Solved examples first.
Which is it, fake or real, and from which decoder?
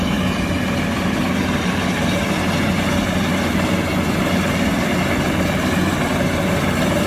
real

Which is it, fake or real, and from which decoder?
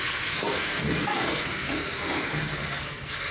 fake, codec, SNAC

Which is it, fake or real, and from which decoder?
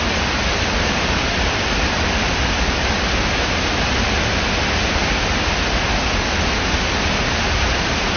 real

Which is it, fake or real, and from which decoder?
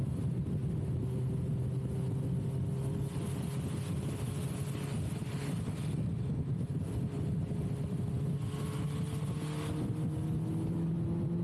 real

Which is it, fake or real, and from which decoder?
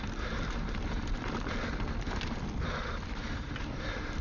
real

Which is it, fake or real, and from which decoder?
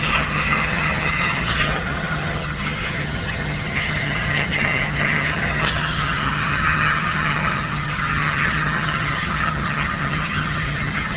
fake, vocoder, HiFi-GAN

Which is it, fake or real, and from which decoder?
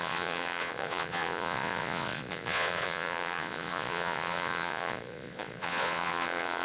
fake, vocoder, Vocos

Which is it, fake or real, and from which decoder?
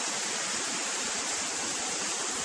real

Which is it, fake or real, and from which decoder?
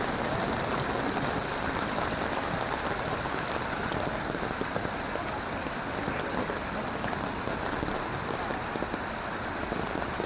real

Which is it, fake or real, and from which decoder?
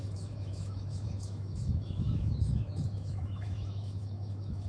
fake, autoencoder, DAC-VAE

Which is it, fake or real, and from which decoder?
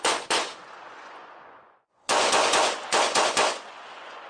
fake, vocoder, Vocos